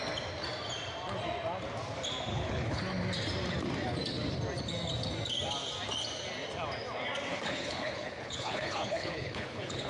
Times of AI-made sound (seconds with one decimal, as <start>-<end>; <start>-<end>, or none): 2.3-2.8; 7.3-9.9